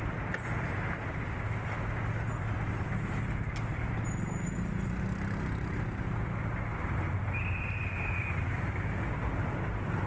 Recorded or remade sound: recorded